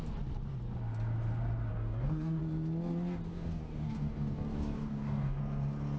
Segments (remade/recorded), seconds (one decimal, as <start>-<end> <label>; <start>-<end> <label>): 0.0-1.7 recorded; 1.7-2.4 remade; 2.4-3.3 recorded; 3.3-5.4 remade; 5.4-6.0 recorded